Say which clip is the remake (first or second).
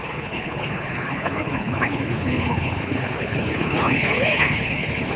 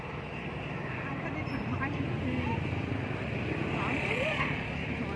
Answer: first